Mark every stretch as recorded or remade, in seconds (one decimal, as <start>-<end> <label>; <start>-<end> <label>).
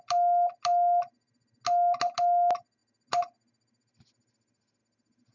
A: 0.0-5.3 recorded